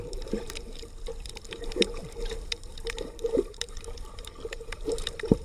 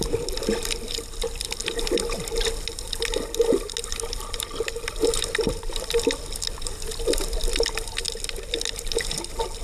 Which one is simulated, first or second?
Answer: first